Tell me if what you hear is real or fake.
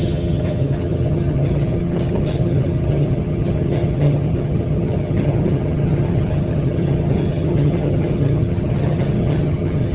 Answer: fake